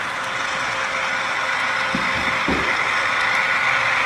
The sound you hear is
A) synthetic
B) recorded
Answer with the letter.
B